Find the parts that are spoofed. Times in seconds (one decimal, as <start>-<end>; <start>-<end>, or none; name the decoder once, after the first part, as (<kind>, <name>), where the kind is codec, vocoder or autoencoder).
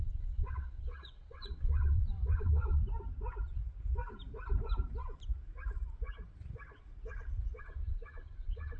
0.0-2.8 (vocoder, WaveNeXt); 7.6-8.8